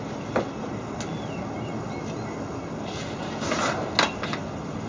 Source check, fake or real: real